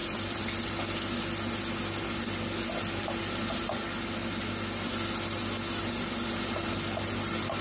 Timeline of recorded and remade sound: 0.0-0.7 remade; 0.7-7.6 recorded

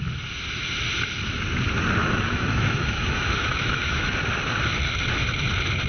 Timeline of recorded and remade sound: 0.0-2.0 recorded; 2.0-4.1 remade; 4.1-5.9 recorded